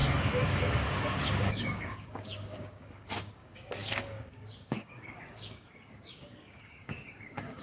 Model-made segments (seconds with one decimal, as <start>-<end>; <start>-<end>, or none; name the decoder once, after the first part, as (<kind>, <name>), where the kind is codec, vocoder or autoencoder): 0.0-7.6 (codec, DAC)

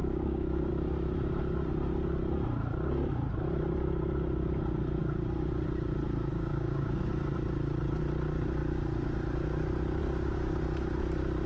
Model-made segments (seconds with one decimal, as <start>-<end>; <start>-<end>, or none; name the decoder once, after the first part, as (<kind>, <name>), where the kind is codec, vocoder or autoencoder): 0.0-0.7 (codec, DAC); 5.0-5.5; 6.3-7.1

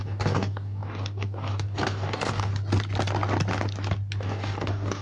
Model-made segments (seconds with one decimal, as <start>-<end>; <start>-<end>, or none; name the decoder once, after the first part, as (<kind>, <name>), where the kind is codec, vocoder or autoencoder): 0.0-2.5 (codec, DAC); 4.2-5.0

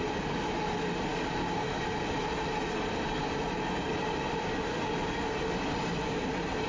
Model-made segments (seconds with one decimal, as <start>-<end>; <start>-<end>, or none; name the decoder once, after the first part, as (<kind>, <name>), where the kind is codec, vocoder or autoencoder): none

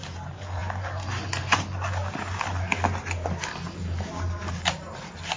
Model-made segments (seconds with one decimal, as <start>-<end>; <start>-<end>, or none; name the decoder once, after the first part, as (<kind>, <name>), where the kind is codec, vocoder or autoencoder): none

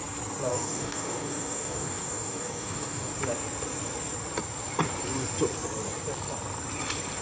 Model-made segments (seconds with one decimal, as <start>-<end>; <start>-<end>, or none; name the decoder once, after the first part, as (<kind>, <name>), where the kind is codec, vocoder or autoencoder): 0.5-3.1 (codec, DAC)